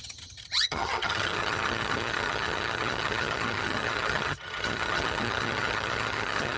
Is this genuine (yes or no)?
no